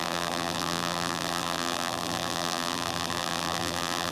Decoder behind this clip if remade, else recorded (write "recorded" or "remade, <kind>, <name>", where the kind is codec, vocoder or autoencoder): remade, vocoder, BigVGAN v2